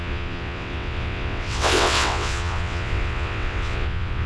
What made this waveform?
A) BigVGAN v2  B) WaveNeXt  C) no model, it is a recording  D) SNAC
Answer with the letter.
B